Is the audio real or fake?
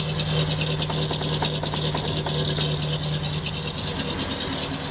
real